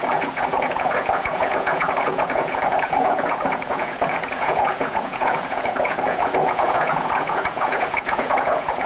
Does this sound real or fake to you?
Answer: fake